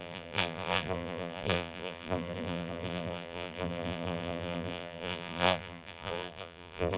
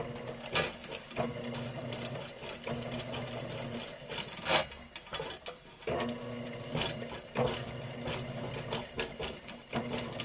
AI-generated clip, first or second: first